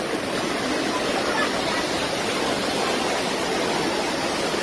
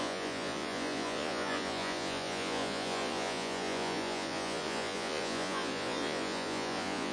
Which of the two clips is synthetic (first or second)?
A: second